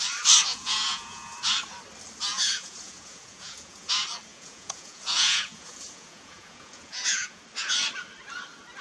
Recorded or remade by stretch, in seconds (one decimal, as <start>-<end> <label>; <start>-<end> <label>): 0.0-0.5 recorded; 0.5-1.3 remade; 1.3-2.3 recorded; 2.3-3.9 remade; 3.9-4.3 recorded; 4.3-7.4 remade; 7.4-8.8 recorded